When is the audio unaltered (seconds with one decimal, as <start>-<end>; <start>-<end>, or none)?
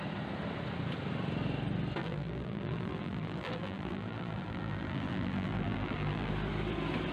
0.0-2.0; 6.3-7.1